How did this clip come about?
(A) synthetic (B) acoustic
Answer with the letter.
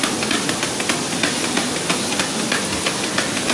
B